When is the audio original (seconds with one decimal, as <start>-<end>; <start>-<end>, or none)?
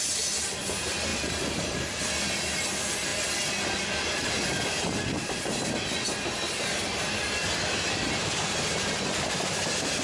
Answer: 0.0-1.1; 2.0-10.0